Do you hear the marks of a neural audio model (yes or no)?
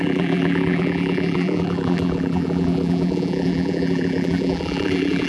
yes